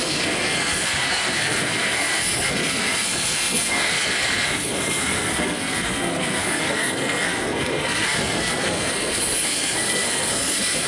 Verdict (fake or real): fake